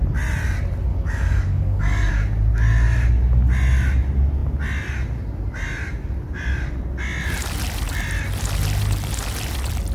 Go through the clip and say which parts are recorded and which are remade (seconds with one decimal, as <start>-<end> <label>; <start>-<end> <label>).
0.0-0.9 recorded; 0.9-2.1 remade; 2.1-9.9 recorded